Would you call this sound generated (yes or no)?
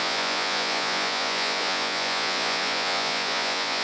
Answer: yes